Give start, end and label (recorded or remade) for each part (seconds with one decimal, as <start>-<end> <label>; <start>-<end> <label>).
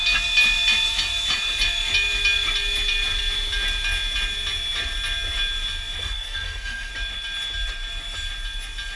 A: 0.0-6.0 recorded; 6.0-6.9 remade; 6.9-9.0 recorded